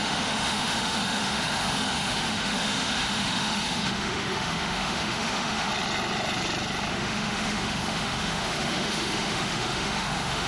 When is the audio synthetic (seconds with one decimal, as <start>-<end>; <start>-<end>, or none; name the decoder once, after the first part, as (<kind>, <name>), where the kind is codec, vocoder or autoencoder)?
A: 0.0-5.7 (autoencoder, DAC-VAE); 6.9-10.5